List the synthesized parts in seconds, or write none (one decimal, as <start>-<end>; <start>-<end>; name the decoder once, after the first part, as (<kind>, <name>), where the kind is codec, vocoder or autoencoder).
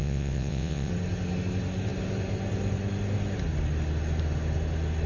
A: 0.0-0.9 (vocoder, WaveNeXt)